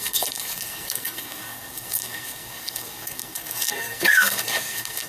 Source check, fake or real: fake